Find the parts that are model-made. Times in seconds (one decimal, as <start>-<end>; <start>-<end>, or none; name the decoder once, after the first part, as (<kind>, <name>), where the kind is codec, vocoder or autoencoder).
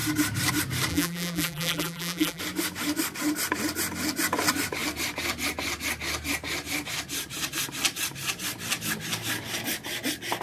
0.9-2.4 (vocoder, BigVGAN v2)